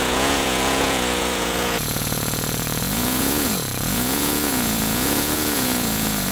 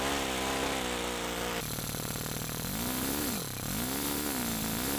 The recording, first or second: second